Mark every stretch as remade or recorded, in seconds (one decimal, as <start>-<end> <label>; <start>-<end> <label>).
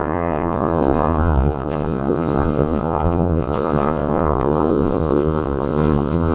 0.0-6.3 remade